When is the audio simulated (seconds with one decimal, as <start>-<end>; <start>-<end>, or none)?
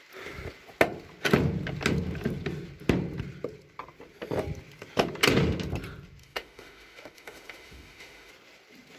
6.2-8.3